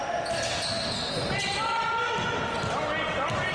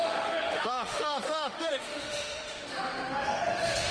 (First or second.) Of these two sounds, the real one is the first